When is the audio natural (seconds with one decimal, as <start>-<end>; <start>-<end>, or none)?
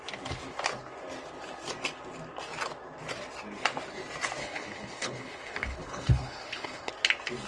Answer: 0.0-4.4; 6.9-7.5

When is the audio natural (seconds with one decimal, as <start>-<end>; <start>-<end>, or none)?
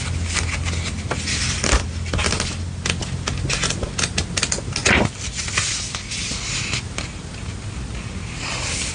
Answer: 0.0-4.8; 5.5-8.9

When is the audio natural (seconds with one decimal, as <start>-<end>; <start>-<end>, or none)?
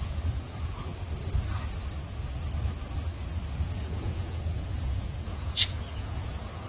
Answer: 0.9-3.8